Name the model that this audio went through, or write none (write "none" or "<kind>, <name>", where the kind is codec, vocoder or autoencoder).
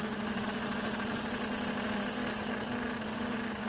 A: none